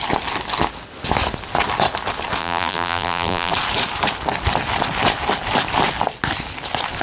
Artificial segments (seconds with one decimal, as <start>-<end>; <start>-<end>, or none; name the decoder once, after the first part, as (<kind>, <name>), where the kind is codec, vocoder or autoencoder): 2.4-3.5 (vocoder, BigVGAN v2)